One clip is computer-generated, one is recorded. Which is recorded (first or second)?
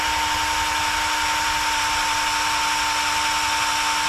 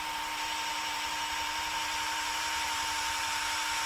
first